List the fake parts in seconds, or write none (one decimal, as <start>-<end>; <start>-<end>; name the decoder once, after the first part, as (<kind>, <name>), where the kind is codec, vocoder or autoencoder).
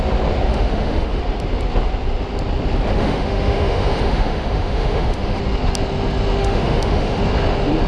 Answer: 0.5-1.2 (autoencoder, DAC-VAE); 2.9-5.4; 6.4-7.2